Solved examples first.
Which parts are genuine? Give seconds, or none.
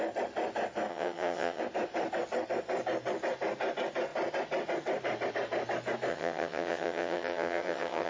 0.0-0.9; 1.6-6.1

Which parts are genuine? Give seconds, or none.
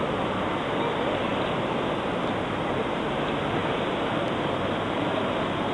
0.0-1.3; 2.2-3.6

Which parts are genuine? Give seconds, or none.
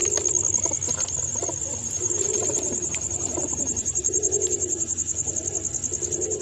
0.0-1.8; 5.3-6.4